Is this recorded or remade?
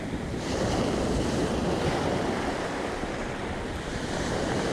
remade